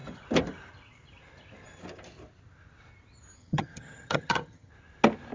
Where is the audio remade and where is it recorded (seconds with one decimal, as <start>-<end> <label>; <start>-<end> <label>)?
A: 0.0-3.4 recorded; 3.4-4.7 remade; 4.7-5.3 recorded